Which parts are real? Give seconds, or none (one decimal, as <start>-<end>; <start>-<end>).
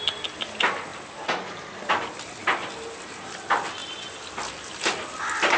0.0-5.6